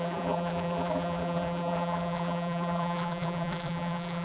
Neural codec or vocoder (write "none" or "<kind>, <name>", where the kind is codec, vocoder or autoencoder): vocoder, BigVGAN v2